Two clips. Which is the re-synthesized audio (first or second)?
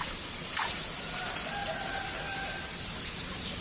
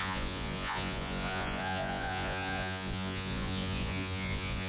second